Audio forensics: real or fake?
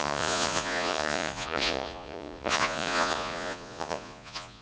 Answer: fake